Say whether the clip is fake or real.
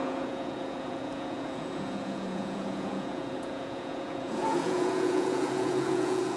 fake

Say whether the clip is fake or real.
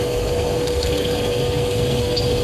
fake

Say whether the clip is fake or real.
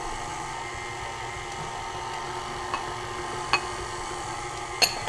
real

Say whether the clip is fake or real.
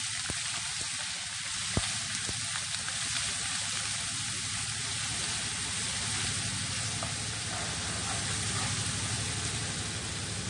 real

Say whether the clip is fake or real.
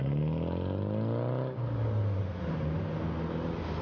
real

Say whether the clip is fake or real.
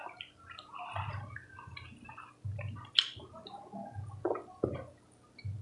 real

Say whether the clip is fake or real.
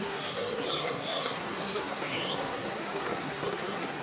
fake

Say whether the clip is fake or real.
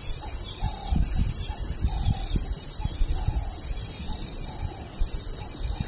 real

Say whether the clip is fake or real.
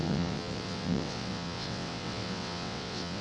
fake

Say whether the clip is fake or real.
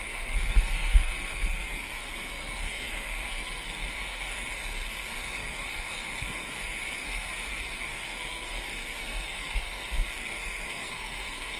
fake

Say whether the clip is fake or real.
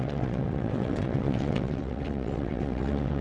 fake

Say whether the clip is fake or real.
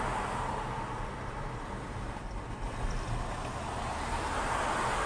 real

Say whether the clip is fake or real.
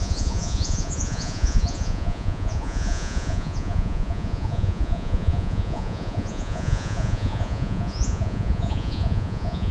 fake